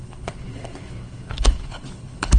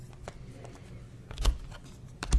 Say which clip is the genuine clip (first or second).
second